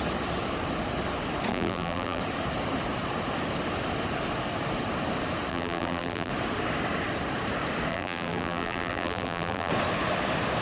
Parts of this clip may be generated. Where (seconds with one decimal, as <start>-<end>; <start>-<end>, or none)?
1.5-2.2; 5.5-6.3; 7.9-9.7